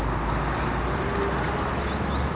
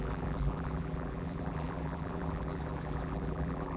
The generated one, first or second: second